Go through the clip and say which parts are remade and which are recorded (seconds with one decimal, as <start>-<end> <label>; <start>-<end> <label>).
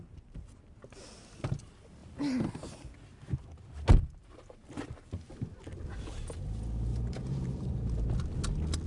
0.0-3.9 recorded; 3.9-5.3 remade; 5.3-6.9 recorded; 6.9-7.7 remade; 7.7-8.9 recorded